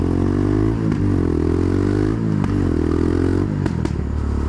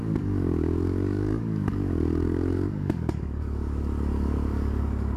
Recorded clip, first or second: first